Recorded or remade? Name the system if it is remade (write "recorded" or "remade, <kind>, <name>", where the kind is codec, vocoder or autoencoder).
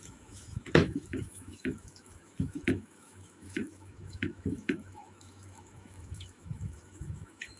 remade, autoencoder, DAC-VAE